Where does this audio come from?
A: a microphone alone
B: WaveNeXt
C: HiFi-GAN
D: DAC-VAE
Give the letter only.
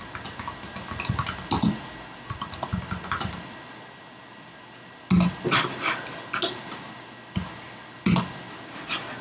A